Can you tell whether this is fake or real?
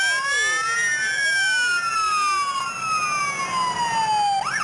real